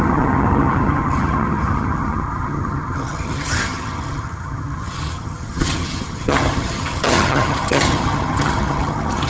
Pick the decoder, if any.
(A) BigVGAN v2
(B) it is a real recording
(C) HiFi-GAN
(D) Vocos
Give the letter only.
C